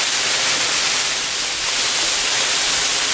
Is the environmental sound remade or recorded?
recorded